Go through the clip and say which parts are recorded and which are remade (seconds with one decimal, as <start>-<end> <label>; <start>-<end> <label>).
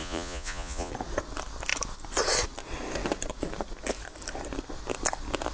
0.0-0.9 remade; 0.9-5.5 recorded